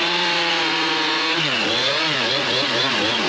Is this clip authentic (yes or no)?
no